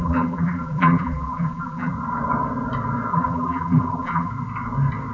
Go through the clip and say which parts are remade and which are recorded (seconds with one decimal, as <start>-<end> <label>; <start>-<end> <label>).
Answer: 0.0-1.9 remade; 1.9-3.1 recorded; 3.1-4.3 remade; 4.3-5.1 recorded